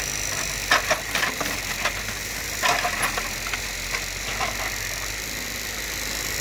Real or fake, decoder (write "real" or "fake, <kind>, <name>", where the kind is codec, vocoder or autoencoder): real